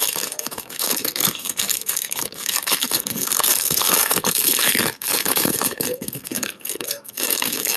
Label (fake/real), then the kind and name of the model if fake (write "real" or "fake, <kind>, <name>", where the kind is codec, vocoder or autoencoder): fake, codec, SNAC